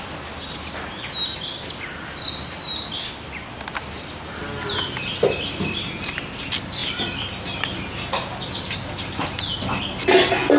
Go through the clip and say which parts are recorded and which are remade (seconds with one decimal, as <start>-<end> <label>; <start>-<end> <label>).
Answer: 0.0-10.6 recorded